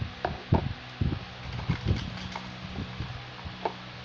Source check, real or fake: real